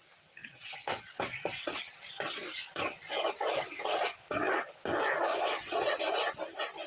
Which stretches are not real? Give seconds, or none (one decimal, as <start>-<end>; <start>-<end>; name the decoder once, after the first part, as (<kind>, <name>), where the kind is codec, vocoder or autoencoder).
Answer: 0.4-2.1 (vocoder, WaveNeXt); 3.6-4.6; 5.3-6.0